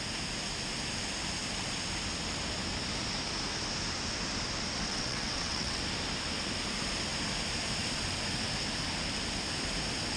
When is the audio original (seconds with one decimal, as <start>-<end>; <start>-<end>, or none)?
0.0-4.9; 5.8-10.2